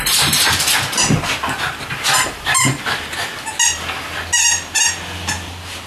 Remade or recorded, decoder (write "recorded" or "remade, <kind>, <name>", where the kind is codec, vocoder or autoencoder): recorded